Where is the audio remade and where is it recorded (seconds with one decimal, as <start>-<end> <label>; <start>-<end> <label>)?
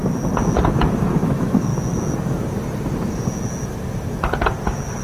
0.0-0.6 recorded; 0.6-1.7 remade; 1.7-5.0 recorded